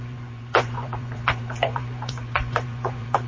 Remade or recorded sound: remade